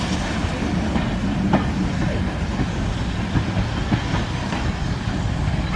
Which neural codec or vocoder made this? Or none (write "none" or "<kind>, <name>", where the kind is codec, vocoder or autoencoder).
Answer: none